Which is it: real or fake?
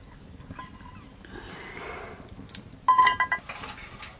real